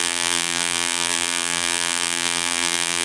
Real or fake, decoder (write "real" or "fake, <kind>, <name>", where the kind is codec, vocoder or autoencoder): fake, vocoder, BigVGAN v2